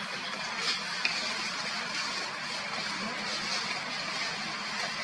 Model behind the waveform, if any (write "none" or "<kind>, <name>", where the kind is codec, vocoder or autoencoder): none